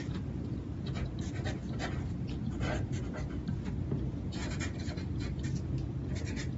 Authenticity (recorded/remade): recorded